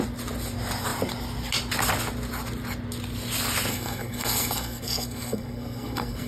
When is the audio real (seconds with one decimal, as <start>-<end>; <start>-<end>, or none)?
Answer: 0.0-3.7

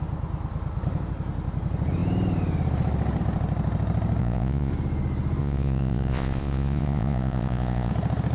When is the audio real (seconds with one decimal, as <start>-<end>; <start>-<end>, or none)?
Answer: 0.0-4.2; 4.7-5.4; 7.9-8.3

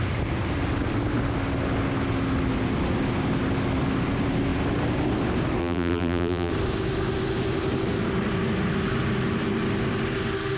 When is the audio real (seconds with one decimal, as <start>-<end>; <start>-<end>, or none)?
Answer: 0.0-5.6; 6.5-10.6